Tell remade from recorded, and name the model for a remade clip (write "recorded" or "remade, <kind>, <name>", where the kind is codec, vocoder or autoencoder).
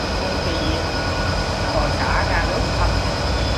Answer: recorded